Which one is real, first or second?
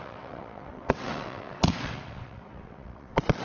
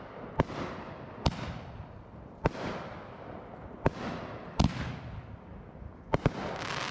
second